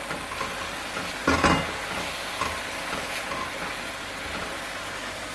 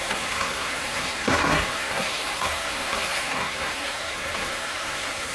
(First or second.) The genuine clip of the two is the first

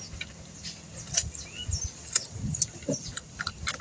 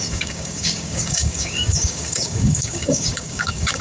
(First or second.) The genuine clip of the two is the first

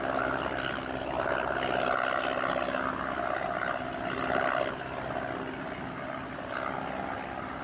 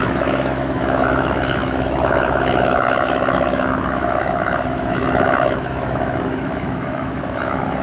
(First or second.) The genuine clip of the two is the first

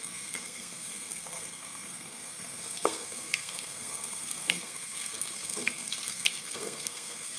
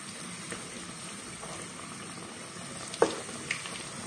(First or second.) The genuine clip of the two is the second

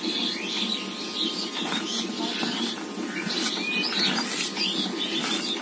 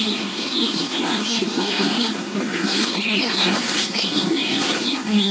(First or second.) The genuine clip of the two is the first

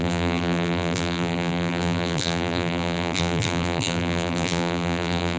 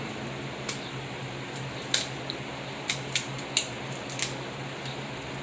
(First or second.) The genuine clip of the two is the second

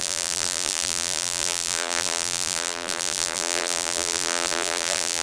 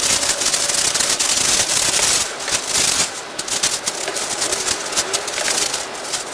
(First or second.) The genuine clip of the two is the second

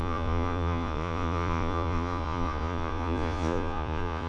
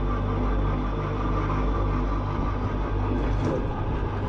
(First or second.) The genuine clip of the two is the second